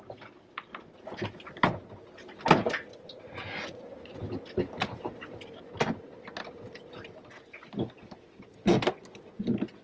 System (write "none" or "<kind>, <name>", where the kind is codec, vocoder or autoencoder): none